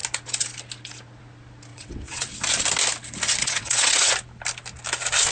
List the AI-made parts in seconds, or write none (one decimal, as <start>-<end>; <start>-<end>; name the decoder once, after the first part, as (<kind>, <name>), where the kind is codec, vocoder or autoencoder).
1.7-2.3 (vocoder, WaveNeXt); 3.4-4.1